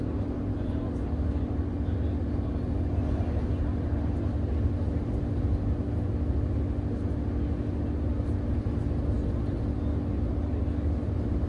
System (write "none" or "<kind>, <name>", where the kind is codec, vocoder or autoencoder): none